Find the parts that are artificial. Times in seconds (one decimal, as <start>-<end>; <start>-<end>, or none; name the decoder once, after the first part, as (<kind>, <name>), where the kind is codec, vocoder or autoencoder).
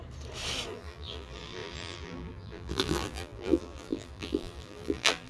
0.7-5.3 (vocoder, BigVGAN v2)